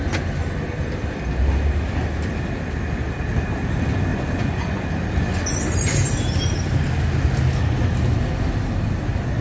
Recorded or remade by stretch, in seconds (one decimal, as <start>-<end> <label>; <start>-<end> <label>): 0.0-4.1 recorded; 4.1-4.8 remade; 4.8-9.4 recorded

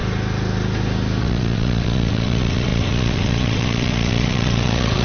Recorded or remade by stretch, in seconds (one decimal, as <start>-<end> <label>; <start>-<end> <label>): 0.0-1.2 recorded; 1.2-5.0 remade

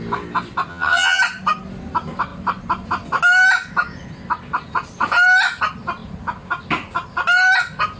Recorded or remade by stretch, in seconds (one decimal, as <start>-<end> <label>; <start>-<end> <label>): 0.0-0.7 recorded; 0.7-1.2 remade; 1.2-8.0 recorded

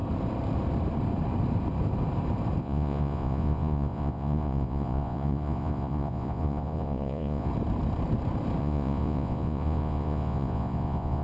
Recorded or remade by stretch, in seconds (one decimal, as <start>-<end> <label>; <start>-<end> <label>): 0.0-2.6 recorded; 2.6-7.5 remade; 7.5-8.6 recorded; 8.6-11.2 remade

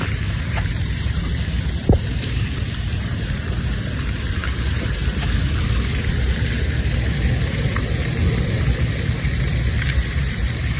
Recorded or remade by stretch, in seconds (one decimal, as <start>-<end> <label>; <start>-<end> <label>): 0.0-10.8 remade

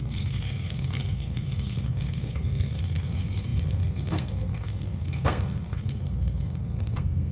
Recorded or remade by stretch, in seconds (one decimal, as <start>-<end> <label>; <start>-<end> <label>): 0.0-7.3 remade

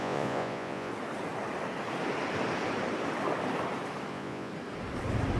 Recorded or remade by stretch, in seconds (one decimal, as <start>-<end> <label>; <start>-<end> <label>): 0.0-0.9 remade; 0.9-4.1 recorded; 4.1-4.5 remade; 4.5-5.4 recorded

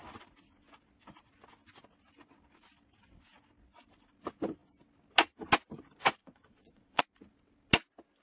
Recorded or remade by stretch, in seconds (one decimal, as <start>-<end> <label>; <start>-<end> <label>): 0.0-6.2 recorded; 6.2-7.0 remade; 7.0-8.2 recorded